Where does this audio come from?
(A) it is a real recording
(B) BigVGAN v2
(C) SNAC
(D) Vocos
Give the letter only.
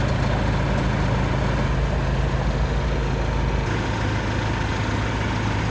A